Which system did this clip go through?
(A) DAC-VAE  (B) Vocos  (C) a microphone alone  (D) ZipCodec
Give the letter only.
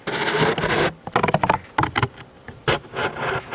C